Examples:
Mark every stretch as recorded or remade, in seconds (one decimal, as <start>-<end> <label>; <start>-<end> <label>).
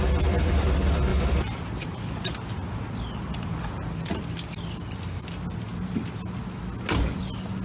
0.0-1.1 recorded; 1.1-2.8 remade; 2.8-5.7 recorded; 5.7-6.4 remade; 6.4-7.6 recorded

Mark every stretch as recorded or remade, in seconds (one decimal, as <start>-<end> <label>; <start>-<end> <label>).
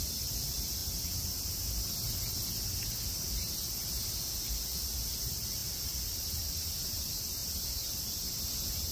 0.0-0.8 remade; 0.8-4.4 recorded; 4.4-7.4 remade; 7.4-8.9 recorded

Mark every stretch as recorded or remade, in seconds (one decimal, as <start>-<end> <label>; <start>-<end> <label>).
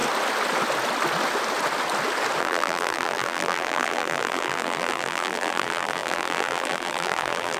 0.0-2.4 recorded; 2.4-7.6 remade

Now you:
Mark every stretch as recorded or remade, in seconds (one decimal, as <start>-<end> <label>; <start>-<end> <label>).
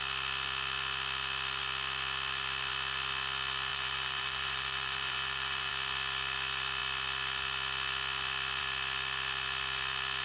0.0-3.7 recorded; 3.7-5.7 remade; 5.7-10.2 recorded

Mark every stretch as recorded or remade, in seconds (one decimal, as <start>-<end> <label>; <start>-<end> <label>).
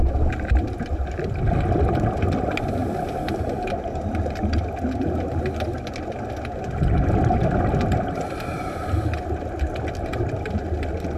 0.0-10.1 recorded; 10.1-10.6 remade; 10.6-11.2 recorded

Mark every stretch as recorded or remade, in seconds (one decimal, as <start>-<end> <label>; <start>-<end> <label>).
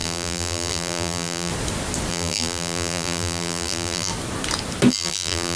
0.0-1.5 remade; 1.5-2.1 recorded; 2.1-4.1 remade; 4.1-4.9 recorded; 4.9-5.6 remade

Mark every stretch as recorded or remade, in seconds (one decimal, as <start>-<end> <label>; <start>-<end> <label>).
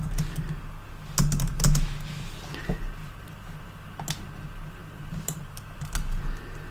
0.0-4.8 recorded; 4.8-5.6 remade; 5.6-6.7 recorded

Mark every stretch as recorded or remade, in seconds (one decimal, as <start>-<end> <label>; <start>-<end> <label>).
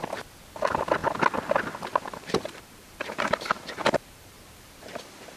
0.0-1.9 recorded; 1.9-5.4 remade